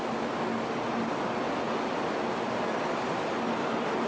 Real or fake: real